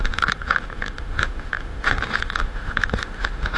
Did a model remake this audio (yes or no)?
yes